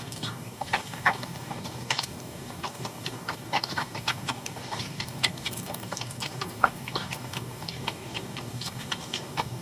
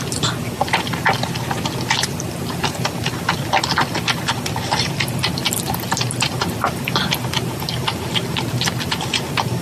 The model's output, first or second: first